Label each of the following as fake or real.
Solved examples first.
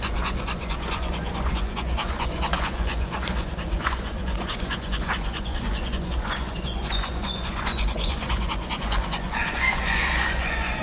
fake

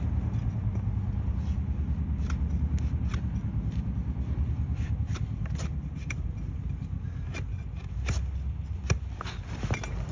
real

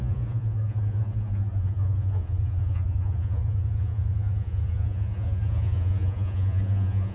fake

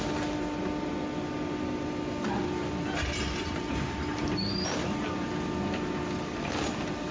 real